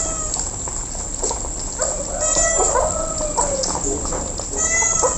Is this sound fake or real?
real